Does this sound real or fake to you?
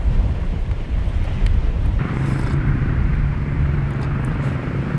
fake